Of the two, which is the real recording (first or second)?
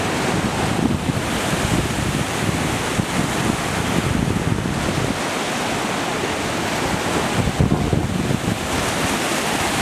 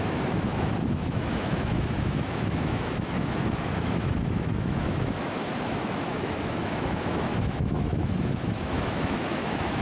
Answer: first